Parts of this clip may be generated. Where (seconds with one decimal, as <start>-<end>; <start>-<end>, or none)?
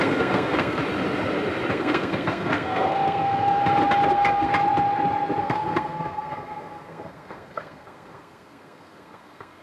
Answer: 0.0-0.8; 1.7-3.6; 4.1-4.5; 5.4-9.6